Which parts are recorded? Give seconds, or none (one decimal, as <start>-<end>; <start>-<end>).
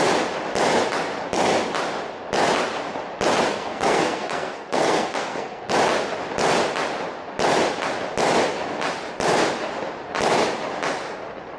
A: 0.0-3.5; 5.7-11.6